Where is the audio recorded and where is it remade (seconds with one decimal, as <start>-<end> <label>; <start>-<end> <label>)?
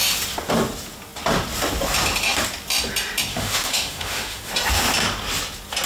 0.0-3.3 recorded; 3.3-4.5 remade; 4.5-5.9 recorded